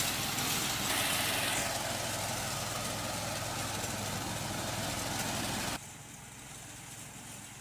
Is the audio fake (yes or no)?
no